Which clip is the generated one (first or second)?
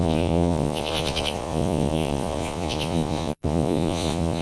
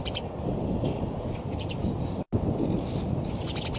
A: first